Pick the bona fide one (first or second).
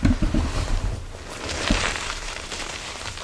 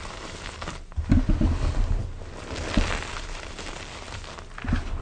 second